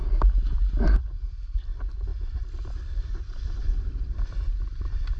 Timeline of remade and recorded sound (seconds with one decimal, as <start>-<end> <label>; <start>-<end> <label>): 0.0-0.7 remade; 0.7-2.1 recorded; 2.1-3.1 remade; 3.1-3.6 recorded; 3.6-5.2 remade